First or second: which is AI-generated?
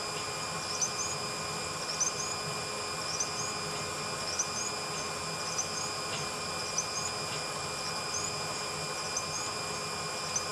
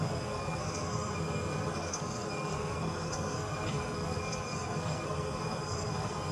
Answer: second